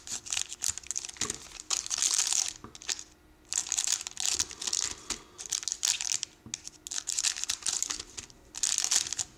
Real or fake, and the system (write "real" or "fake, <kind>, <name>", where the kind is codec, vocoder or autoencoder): real